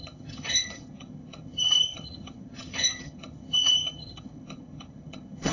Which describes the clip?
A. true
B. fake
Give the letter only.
B